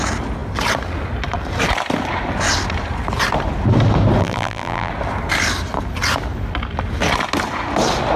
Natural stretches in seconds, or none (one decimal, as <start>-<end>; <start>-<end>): 0.0-4.2; 4.9-8.2